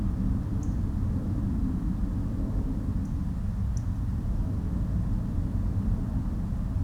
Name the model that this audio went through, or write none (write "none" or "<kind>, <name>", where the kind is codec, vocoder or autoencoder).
none